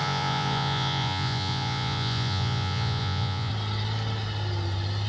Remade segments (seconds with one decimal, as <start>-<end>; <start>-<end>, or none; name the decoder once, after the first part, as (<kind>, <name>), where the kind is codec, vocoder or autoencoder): 0.0-3.5 (vocoder, Vocos)